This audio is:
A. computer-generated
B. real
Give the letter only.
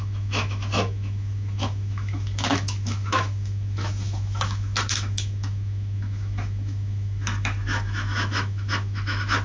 A